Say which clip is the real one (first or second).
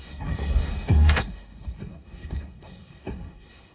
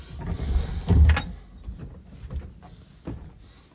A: second